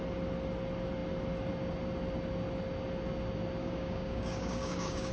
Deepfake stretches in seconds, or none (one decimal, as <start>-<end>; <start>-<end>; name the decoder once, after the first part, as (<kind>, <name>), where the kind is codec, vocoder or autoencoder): 3.6-5.1 (codec, DAC)

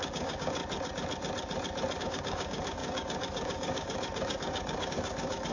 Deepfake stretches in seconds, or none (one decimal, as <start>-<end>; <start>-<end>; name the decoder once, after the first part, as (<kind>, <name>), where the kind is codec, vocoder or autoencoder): 0.0-0.6 (codec, DAC); 2.0-5.5

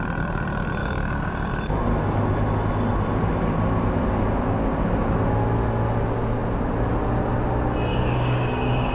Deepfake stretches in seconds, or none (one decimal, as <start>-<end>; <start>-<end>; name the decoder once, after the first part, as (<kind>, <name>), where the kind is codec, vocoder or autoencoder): 0.8-1.5 (codec, DAC); 7.9-8.9

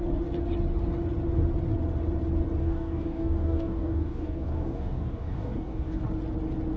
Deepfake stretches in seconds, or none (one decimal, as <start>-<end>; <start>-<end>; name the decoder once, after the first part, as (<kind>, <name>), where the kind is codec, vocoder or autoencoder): 2.6-6.0 (codec, DAC)